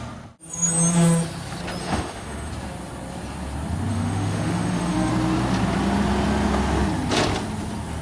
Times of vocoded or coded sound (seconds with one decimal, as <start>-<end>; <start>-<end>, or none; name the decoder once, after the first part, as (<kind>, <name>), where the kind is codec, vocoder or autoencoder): 1.8-2.5 (autoencoder, DAC-VAE); 3.9-5.1